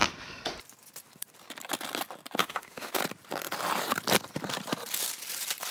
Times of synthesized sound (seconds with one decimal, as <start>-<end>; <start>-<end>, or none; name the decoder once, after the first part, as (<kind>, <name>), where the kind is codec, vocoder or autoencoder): 2.4-3.0 (autoencoder, DAC-VAE)